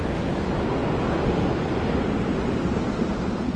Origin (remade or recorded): recorded